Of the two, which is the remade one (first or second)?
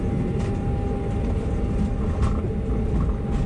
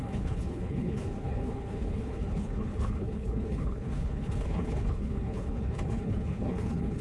second